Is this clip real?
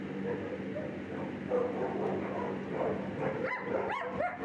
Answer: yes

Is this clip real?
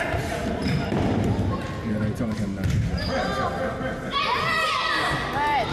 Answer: yes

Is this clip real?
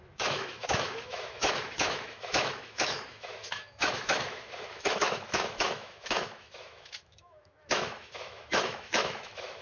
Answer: no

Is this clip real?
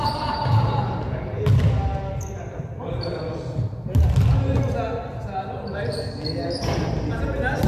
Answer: yes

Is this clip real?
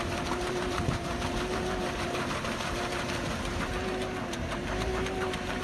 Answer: no